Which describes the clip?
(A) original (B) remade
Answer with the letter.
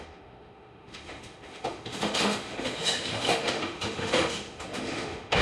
B